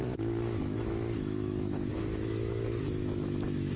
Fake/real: fake